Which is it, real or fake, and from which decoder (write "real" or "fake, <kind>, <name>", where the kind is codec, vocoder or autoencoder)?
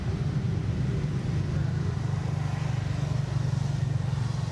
real